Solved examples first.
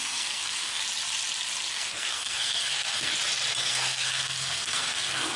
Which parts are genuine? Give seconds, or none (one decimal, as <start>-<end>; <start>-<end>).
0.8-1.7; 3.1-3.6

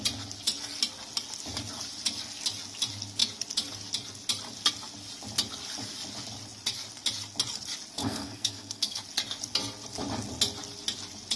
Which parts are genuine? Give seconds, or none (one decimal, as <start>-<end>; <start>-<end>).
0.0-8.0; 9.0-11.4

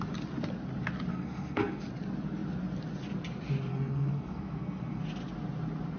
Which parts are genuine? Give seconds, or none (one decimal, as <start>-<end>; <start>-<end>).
0.0-1.1; 1.8-3.7; 5.0-6.0

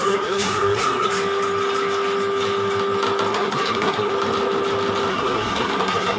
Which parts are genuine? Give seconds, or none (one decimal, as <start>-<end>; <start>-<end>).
1.1-3.3; 4.1-5.1